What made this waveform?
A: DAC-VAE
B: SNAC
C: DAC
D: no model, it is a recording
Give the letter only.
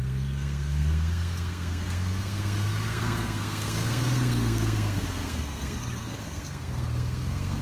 B